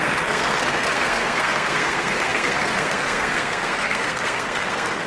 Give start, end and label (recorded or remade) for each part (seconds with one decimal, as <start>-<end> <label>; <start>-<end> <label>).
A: 0.0-5.1 remade